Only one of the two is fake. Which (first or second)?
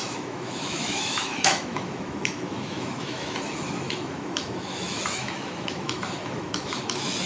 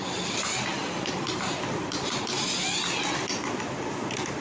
first